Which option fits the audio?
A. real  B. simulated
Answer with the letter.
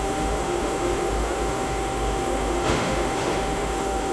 B